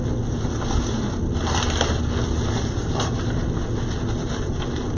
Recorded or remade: recorded